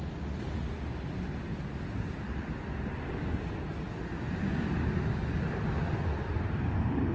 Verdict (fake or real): real